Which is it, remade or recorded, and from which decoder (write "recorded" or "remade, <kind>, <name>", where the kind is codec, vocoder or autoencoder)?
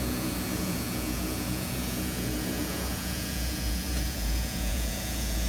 remade, vocoder, Vocos